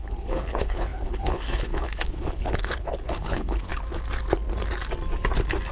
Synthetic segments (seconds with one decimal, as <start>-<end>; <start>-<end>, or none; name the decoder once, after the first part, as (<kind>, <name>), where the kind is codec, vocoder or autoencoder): 0.0-3.7 (codec, HILCodec)